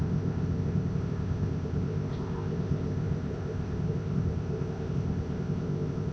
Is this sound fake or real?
fake